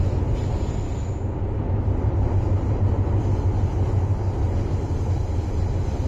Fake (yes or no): no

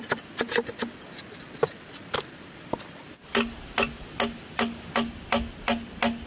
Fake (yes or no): no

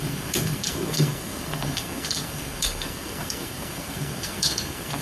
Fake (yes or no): yes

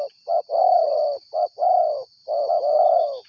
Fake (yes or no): no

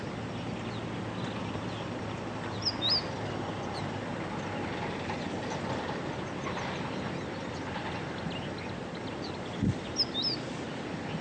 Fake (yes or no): no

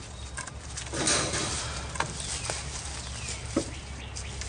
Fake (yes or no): no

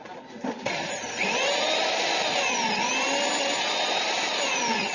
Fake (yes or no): no